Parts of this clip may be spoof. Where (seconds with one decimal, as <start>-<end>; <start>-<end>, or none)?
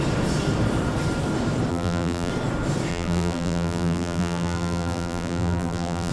1.7-2.3; 2.9-6.1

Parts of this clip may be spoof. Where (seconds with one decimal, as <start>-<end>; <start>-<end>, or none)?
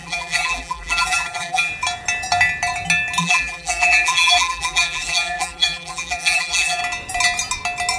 0.0-1.7; 3.2-6.8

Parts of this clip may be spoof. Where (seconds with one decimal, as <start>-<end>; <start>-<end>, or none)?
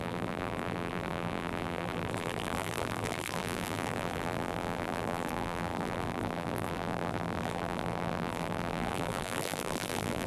0.0-10.3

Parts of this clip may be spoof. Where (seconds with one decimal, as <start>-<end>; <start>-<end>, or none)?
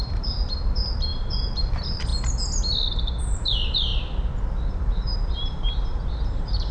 0.0-2.1; 3.2-3.9; 4.7-6.7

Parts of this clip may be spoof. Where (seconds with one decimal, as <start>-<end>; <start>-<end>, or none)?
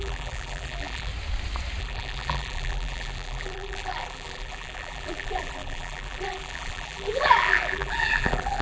0.0-1.1; 1.8-8.6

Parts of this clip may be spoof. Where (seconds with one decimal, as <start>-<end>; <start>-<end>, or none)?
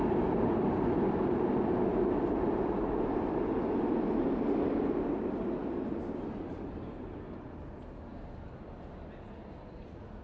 5.6-7.4